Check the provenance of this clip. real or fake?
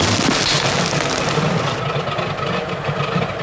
real